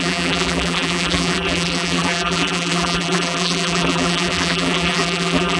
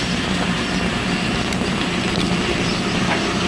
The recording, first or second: second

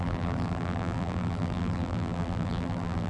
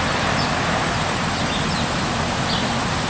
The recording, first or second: second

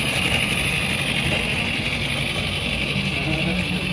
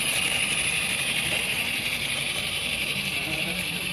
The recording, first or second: first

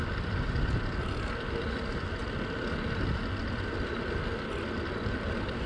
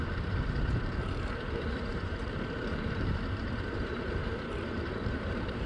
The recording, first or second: first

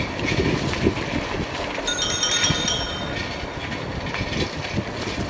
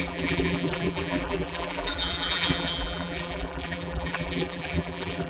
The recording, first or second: first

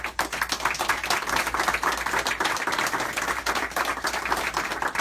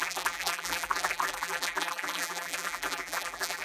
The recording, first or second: first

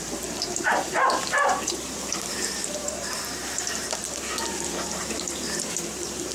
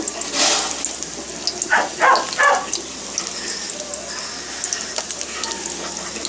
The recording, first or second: second